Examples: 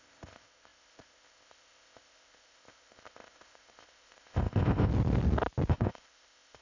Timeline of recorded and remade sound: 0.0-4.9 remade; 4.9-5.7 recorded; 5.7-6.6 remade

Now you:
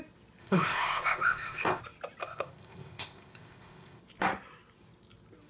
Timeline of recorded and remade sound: 0.0-0.4 recorded; 0.4-1.8 remade; 1.8-2.2 recorded; 2.2-4.0 remade; 4.0-5.5 recorded

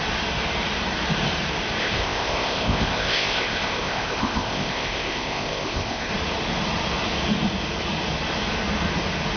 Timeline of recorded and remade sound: 0.0-1.8 recorded; 1.8-6.1 remade; 6.1-9.4 recorded

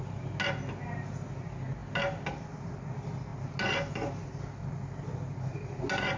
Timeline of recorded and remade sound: 0.0-6.2 recorded

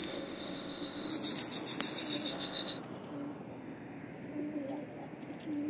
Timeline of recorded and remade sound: 0.0-1.1 remade; 1.1-2.3 recorded; 2.3-2.8 remade; 2.8-3.5 recorded; 3.5-4.0 remade; 4.0-5.7 recorded